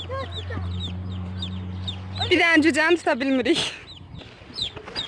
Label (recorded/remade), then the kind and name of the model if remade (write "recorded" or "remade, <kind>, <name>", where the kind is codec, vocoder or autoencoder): recorded